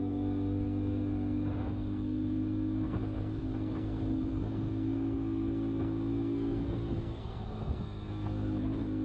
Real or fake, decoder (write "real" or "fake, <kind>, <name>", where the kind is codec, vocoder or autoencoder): fake, codec, SNAC